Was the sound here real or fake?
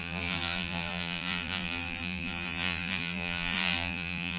fake